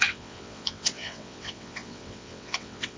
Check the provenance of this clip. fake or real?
fake